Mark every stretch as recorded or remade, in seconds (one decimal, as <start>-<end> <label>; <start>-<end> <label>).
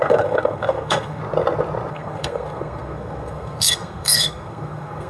0.0-1.2 remade; 1.2-1.9 recorded; 1.9-5.1 remade